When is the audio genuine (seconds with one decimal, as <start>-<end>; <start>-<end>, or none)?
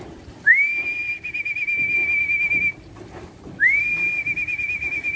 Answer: 0.5-2.6